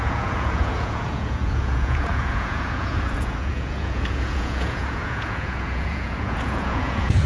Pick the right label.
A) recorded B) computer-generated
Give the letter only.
B